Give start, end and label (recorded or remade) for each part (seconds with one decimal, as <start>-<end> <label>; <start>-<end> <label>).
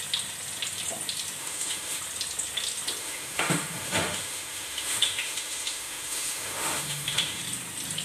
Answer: 0.0-1.4 recorded; 1.4-2.0 remade; 2.0-3.0 recorded; 3.0-7.4 remade; 7.4-8.0 recorded